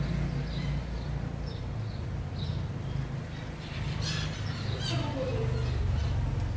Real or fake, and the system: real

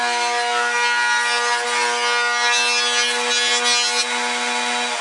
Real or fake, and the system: real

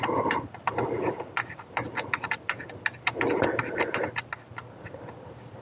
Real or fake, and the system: real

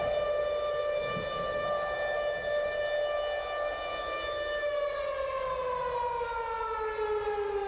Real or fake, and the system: real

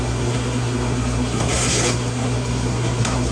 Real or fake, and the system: fake, codec, SNAC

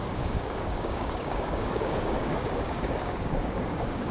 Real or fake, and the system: fake, codec, DAC